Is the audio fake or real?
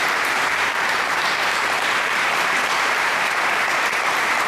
fake